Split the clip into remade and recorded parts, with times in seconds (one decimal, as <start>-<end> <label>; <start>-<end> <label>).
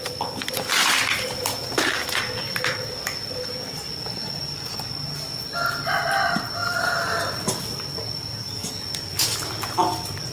0.0-10.3 recorded